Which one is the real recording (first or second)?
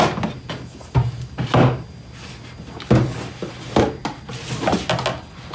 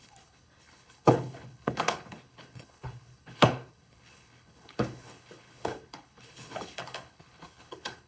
first